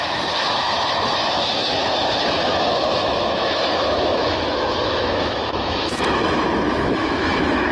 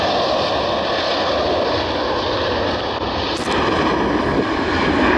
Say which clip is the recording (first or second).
second